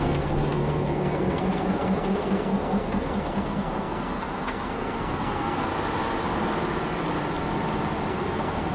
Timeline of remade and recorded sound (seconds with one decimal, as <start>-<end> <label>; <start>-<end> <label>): 0.0-5.7 remade; 5.7-8.1 recorded; 8.1-8.7 remade

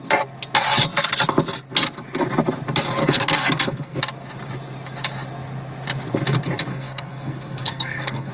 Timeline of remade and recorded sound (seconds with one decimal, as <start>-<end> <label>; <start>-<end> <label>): 0.0-3.0 recorded; 3.0-4.0 remade; 4.0-6.7 recorded; 6.7-8.3 remade